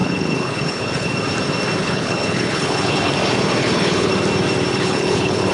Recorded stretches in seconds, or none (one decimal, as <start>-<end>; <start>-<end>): 1.1-1.8; 3.1-3.6; 4.1-4.7